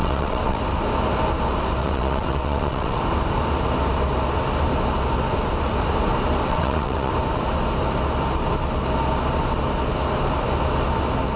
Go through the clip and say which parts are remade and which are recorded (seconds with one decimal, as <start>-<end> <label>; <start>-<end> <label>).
0.0-0.6 remade; 0.6-1.8 recorded; 1.8-3.0 remade; 3.0-6.5 recorded; 6.5-7.1 remade; 7.1-11.4 recorded